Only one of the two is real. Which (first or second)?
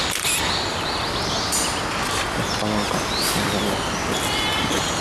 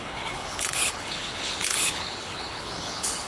first